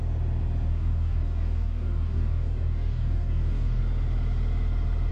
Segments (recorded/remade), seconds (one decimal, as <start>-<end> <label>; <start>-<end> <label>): 0.0-0.7 recorded; 0.7-3.8 remade; 3.8-5.1 recorded

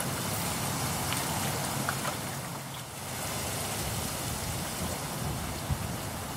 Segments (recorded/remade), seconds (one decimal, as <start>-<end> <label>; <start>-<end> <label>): 0.0-6.4 recorded

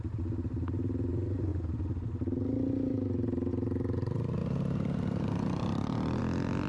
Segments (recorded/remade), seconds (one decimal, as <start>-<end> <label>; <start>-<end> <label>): 0.0-4.4 recorded; 4.4-6.2 remade; 6.2-6.7 recorded

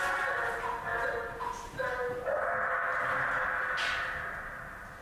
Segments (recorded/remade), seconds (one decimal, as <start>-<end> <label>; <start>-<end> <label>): 0.0-5.0 recorded